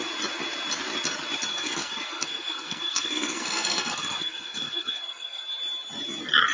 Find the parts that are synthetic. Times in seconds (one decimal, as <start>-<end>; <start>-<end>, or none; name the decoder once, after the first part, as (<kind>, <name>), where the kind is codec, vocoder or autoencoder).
1.5-5.4 (codec, SNAC)